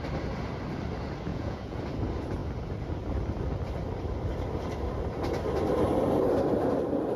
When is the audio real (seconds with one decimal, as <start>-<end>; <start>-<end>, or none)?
0.0-1.3; 1.8-7.2